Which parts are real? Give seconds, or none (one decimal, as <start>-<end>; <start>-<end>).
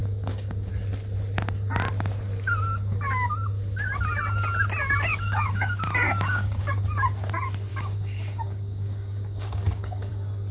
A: 0.7-5.1; 6.8-7.7; 10.1-10.5